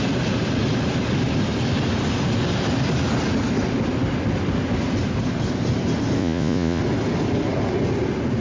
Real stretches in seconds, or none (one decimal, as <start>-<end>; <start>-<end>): 0.0-6.2; 6.8-8.4